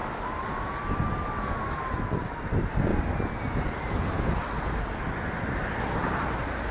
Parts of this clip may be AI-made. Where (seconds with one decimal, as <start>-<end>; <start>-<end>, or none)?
none